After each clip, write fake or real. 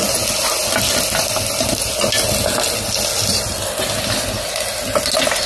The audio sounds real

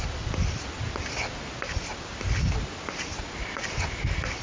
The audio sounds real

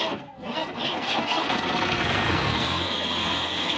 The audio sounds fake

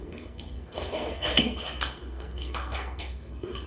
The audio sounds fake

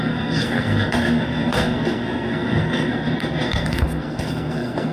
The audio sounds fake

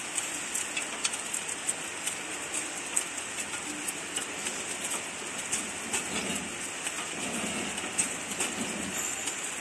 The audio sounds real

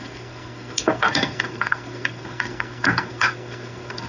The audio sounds fake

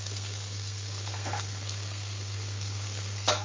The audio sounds fake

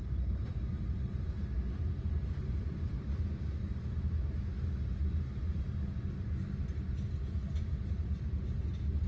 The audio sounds real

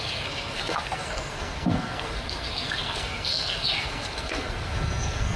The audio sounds fake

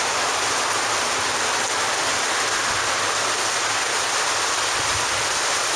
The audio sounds real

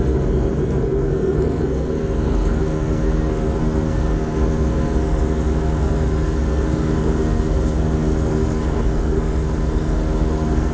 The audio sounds fake